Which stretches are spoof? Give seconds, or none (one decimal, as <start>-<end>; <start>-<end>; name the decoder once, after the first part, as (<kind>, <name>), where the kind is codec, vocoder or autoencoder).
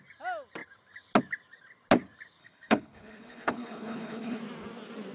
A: 2.4-4.4 (codec, HILCodec)